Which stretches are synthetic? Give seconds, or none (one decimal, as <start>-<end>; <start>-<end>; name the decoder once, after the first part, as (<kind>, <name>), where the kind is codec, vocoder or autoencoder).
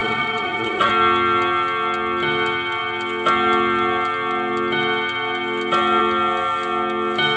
0.0-0.9 (vocoder, Vocos)